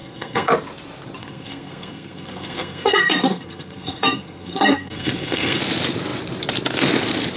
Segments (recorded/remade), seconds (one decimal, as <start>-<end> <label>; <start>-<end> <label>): 0.0-0.5 remade; 0.5-1.2 recorded; 1.2-5.6 remade; 5.6-7.4 recorded